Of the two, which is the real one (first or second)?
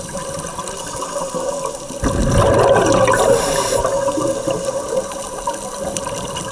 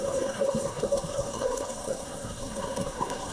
first